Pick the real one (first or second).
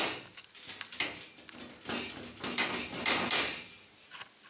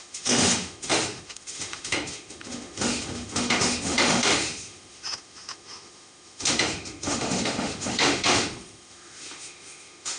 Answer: first